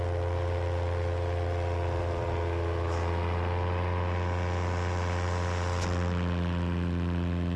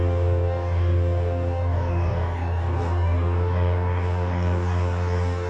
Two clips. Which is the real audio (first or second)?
first